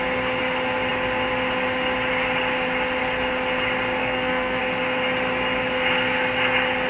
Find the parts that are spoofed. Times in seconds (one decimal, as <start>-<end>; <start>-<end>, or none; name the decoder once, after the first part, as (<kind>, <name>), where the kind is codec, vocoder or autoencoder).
4.0-4.6 (codec, SNAC)